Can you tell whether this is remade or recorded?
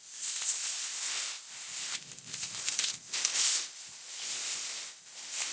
remade